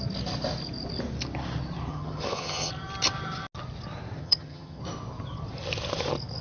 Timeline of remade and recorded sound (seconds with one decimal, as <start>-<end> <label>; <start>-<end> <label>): 0.0-1.9 recorded; 1.9-2.7 remade; 2.7-4.2 recorded; 4.2-4.8 remade; 4.8-6.4 recorded